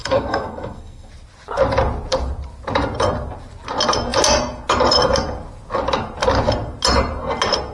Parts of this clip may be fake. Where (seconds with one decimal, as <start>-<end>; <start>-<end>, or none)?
0.0-1.1

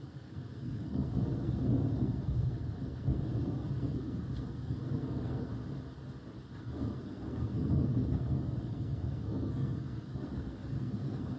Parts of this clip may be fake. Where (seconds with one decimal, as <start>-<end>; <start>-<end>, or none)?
0.0-5.5; 6.6-11.4

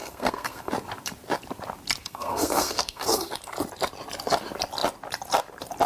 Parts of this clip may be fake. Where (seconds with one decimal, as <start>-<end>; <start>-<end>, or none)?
0.0-0.7; 2.0-3.3

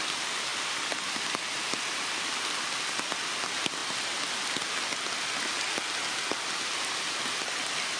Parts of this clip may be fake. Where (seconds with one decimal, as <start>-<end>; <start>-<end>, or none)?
none